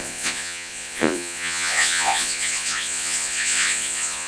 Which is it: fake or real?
fake